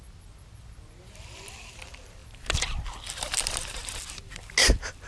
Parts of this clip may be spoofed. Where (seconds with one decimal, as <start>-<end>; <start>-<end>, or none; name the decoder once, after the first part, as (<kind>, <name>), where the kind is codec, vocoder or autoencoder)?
none